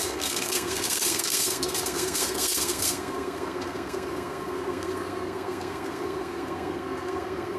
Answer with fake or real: fake